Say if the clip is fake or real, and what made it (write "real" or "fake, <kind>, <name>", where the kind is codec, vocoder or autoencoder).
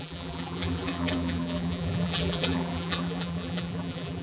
fake, vocoder, BigVGAN v2